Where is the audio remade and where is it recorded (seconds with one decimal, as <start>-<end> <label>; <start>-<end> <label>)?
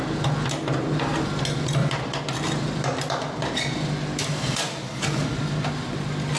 0.0-1.8 recorded; 1.8-5.4 remade; 5.4-6.4 recorded